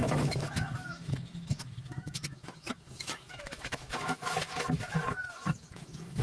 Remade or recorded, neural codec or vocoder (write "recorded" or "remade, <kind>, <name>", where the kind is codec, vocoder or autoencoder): remade, autoencoder, DAC-VAE